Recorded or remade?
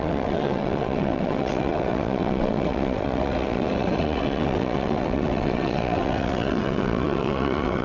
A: remade